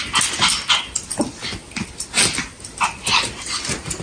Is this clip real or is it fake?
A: real